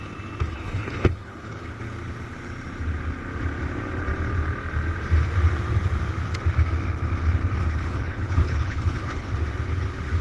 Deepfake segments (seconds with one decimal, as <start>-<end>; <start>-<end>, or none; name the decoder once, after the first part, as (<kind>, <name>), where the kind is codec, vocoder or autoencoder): 0.5-1.8 (codec, HILCodec); 7.6-9.3